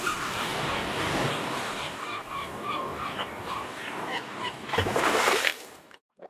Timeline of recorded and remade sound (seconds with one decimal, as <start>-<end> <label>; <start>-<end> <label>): 0.0-6.3 remade